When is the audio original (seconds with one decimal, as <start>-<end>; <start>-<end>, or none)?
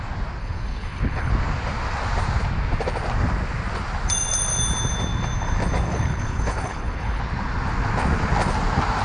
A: 0.0-0.4; 1.3-5.9; 7.2-9.0